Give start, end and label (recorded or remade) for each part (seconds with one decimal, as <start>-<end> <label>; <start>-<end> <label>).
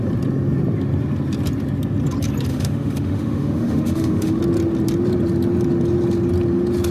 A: 0.0-2.5 recorded; 2.5-4.4 remade; 4.4-6.9 recorded